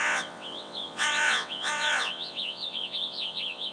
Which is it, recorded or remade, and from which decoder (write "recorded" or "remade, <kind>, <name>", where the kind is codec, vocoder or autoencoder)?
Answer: remade, vocoder, WaveNeXt